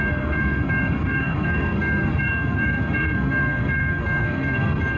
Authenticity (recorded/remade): remade